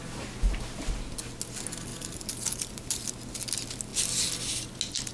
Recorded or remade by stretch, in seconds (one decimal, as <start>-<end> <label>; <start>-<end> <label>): 0.0-1.9 recorded; 1.9-3.1 remade; 3.1-5.1 recorded